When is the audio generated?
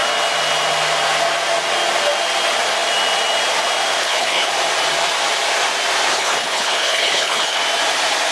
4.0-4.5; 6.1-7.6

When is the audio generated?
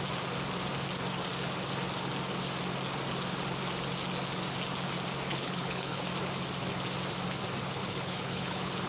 5.3-6.0; 7.8-8.9